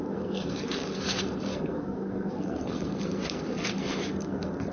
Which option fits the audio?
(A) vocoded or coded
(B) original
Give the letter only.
A